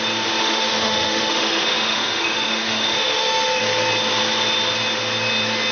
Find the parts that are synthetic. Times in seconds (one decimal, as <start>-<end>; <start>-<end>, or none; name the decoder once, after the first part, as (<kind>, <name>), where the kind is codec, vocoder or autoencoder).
0.4-3.6 (autoencoder, DAC-VAE)